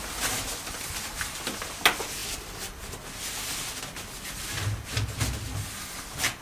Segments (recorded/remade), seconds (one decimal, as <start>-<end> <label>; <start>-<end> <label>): 0.0-2.2 recorded; 2.2-3.2 remade; 3.2-6.4 recorded